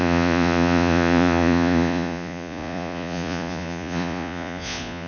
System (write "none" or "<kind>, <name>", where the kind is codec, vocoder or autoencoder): vocoder, Vocos